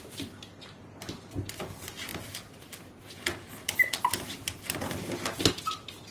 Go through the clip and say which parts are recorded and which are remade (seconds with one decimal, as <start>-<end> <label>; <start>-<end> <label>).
0.0-6.1 recorded